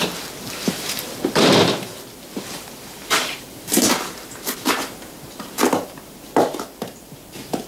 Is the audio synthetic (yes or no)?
yes